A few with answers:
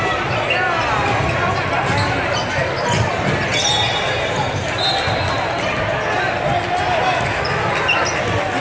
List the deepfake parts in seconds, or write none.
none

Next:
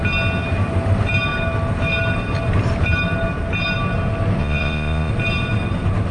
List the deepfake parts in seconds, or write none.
4.4-5.1 (vocoder, Vocos)

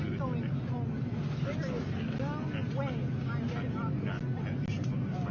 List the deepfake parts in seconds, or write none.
none

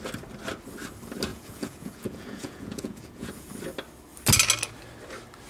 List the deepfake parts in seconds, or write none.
1.3-3.5 (vocoder, Vocos)